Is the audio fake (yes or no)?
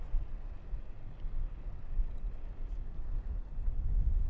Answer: no